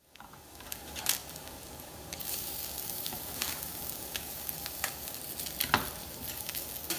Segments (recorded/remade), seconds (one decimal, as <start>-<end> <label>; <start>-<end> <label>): 0.0-5.2 remade; 5.2-6.3 recorded; 6.3-7.0 remade